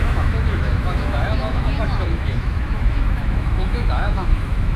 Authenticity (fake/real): fake